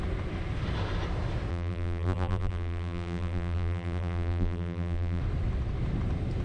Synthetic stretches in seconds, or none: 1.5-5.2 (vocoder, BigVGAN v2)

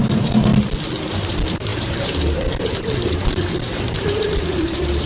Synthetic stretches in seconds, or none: 0.0-0.5 (vocoder, BigVGAN v2); 1.1-5.1

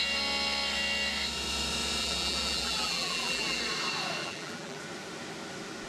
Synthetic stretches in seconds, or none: 2.0-3.6 (vocoder, BigVGAN v2); 4.2-4.8

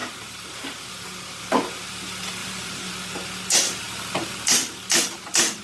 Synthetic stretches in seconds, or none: 2.4-2.9 (vocoder, BigVGAN v2)

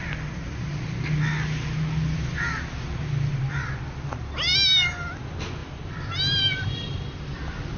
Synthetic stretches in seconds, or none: 5.6-7.8 (vocoder, BigVGAN v2)

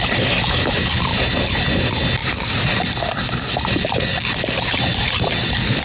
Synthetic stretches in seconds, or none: 2.2-5.8 (vocoder, BigVGAN v2)